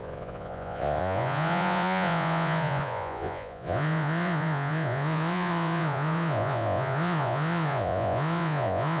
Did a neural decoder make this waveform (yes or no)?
yes